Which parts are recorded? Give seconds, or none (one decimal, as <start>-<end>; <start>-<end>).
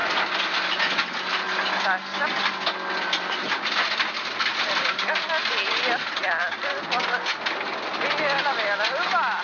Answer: 0.0-9.4